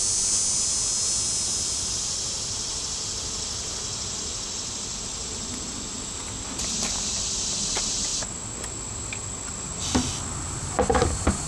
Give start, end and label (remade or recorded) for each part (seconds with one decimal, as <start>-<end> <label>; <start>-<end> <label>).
0.0-11.5 recorded